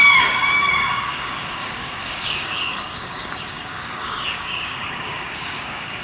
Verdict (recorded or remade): remade